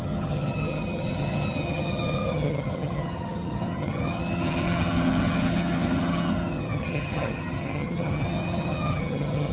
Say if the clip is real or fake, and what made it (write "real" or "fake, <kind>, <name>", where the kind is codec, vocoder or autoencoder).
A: fake, vocoder, HiFi-GAN